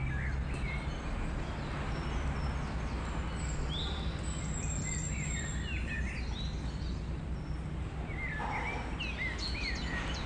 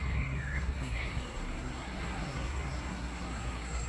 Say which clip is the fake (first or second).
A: second